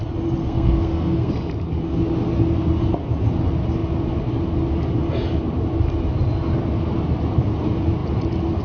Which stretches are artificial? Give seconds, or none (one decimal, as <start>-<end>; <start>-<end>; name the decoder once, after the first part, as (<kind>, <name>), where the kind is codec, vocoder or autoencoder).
0.4-1.3 (codec, SNAC)